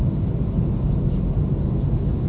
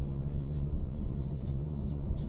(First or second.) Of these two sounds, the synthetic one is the second